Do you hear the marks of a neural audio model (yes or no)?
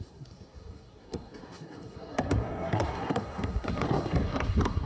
yes